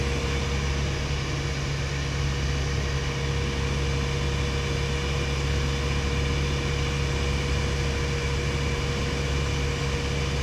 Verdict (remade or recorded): recorded